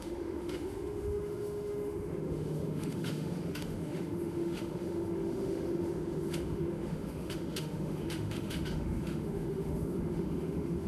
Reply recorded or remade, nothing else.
remade